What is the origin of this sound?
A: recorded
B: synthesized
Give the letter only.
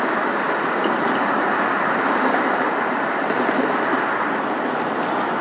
A